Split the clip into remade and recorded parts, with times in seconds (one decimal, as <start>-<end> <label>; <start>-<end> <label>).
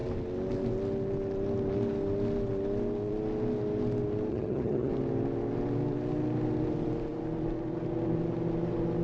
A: 0.0-4.3 recorded; 4.3-4.9 remade; 4.9-9.0 recorded